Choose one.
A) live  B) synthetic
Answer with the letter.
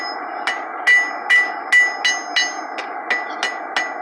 A